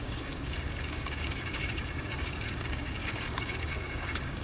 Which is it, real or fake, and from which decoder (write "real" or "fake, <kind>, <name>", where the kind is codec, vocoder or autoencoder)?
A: fake, codec, DAC